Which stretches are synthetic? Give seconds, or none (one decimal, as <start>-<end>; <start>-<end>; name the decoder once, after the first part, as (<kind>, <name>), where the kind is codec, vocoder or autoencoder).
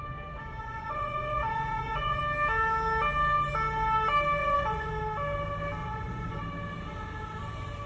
0.6-2.2 (vocoder, Vocos); 4.4-4.9; 5.8-6.4